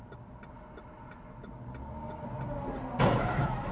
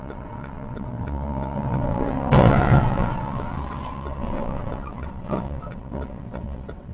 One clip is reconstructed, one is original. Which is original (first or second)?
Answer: first